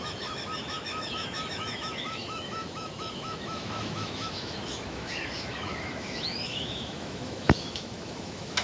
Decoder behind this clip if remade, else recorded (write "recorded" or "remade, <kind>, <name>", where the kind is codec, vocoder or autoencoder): remade, autoencoder, DAC-VAE